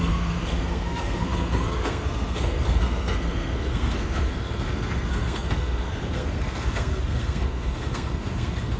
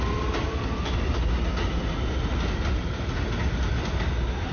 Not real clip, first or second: first